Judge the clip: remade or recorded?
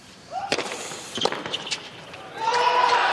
remade